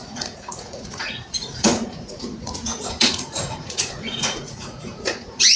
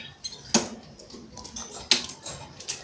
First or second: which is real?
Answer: second